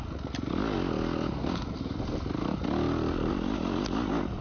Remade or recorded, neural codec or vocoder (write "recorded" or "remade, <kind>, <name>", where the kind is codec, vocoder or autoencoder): recorded